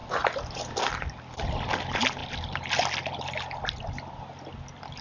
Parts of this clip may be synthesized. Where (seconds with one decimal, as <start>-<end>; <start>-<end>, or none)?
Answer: none